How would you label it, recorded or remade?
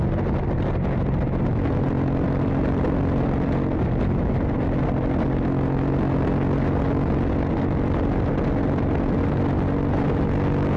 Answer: recorded